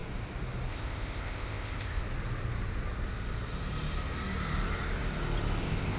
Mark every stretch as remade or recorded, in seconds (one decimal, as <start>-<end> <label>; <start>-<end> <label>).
0.0-0.7 recorded; 0.7-2.0 remade; 2.0-5.6 recorded; 5.6-6.0 remade